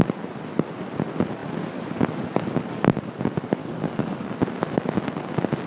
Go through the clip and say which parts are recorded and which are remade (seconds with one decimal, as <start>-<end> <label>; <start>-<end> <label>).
0.0-3.6 recorded; 3.6-4.3 remade; 4.3-5.7 recorded